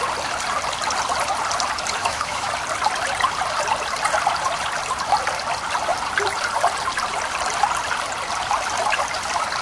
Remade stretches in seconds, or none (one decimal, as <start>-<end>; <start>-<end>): 2.0-2.5